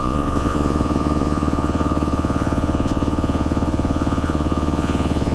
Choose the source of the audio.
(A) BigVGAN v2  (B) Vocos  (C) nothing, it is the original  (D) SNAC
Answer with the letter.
B